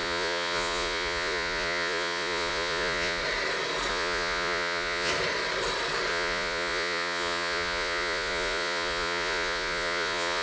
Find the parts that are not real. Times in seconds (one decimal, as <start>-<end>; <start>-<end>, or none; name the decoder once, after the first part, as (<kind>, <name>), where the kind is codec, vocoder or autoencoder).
0.0-3.2 (vocoder, Vocos); 3.9-5.1; 6.1-10.4